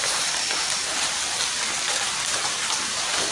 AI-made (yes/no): yes